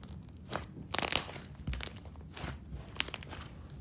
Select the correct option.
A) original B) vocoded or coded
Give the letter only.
A